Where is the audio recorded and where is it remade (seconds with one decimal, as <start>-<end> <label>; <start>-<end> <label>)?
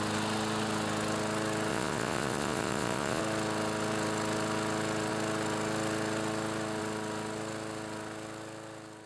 0.0-1.7 recorded; 1.7-3.2 remade; 3.2-9.1 recorded